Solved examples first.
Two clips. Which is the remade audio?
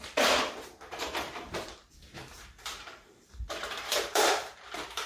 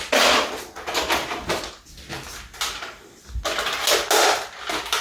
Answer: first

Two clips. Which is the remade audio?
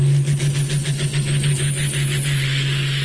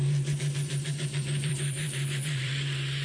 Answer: second